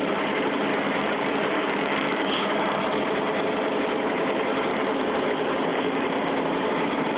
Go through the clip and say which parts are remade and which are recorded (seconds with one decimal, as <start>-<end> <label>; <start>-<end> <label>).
0.0-0.7 recorded; 0.7-2.8 remade; 2.8-4.7 recorded; 4.7-5.3 remade; 5.3-5.7 recorded; 5.7-6.3 remade; 6.3-7.2 recorded